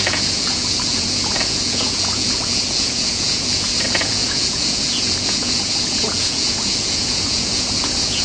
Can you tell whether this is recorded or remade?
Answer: remade